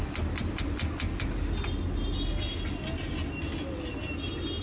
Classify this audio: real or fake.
real